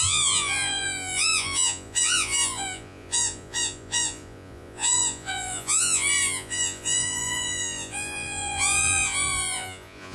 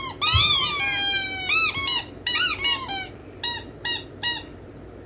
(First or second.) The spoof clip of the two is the first